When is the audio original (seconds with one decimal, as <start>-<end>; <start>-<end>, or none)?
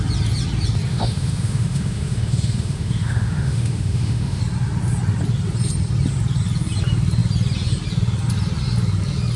0.0-0.9; 4.4-9.4